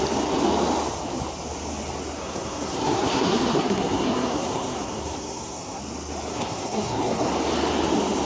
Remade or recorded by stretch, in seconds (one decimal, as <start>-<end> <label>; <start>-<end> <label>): 0.0-2.2 recorded; 2.2-5.8 remade; 5.8-6.3 recorded; 6.3-7.3 remade; 7.3-8.3 recorded

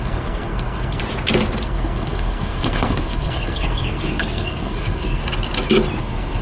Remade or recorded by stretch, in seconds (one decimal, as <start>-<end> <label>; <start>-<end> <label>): 0.0-1.0 remade; 1.0-1.6 recorded; 1.6-5.2 remade; 5.2-6.0 recorded; 6.0-6.4 remade